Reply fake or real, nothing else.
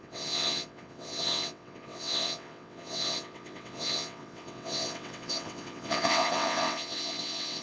fake